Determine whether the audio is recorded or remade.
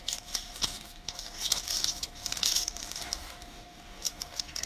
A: remade